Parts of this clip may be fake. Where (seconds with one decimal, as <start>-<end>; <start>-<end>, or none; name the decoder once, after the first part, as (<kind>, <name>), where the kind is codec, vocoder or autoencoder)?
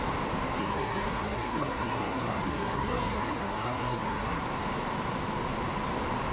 0.6-4.4 (codec, SNAC)